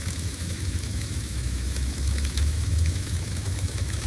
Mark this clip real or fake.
fake